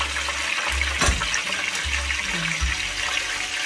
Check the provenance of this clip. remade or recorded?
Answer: recorded